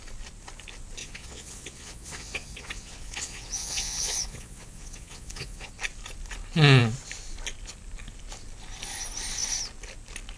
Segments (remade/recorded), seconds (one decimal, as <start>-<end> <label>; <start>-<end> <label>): 0.0-1.0 recorded; 1.0-5.7 remade; 5.7-10.4 recorded